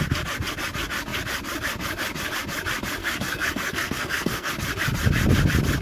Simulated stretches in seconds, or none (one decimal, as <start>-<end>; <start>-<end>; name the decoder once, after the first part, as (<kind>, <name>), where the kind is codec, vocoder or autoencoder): 3.0-4.5 (codec, SNAC)